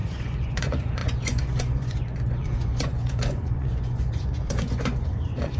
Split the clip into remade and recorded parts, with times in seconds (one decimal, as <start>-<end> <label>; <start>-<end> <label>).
0.0-5.6 remade